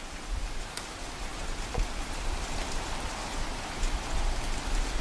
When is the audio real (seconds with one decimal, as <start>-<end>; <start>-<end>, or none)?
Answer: 0.0-5.0

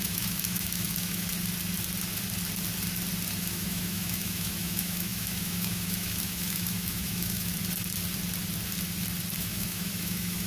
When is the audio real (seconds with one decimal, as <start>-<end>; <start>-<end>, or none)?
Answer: 1.3-3.4; 7.5-9.4

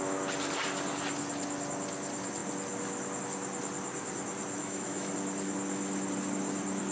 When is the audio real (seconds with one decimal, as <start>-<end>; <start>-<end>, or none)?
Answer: 0.0-4.6; 5.1-6.9

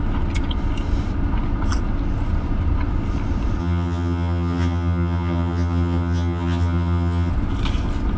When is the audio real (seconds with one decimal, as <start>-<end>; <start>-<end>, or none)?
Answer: 0.0-3.6; 7.3-8.2

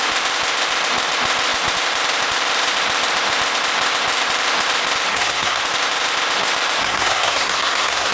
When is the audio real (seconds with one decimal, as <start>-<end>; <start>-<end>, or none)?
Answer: 0.0-5.1; 5.6-6.8

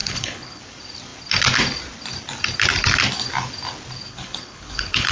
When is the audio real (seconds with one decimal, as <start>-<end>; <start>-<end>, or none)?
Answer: 0.6-4.1

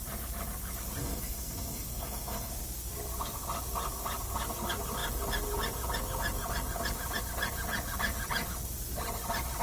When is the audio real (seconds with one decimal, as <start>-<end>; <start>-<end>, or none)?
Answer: 0.0-1.0; 2.5-9.6